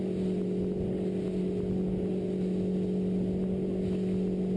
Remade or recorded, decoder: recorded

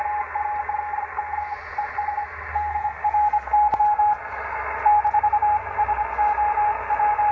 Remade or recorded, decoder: recorded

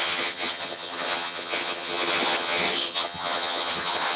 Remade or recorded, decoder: remade, vocoder, HiFi-GAN